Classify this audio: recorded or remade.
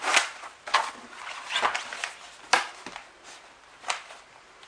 recorded